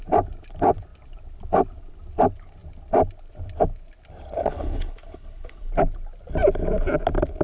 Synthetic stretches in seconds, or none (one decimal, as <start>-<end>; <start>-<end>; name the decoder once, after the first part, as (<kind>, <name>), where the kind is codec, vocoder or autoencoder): 4.5-5.7 (codec, HILCodec)